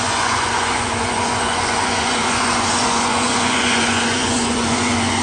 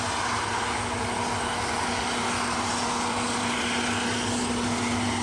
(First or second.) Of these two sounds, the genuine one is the second